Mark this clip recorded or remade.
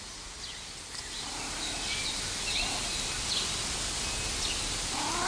recorded